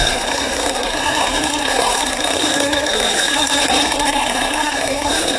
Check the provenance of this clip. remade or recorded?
remade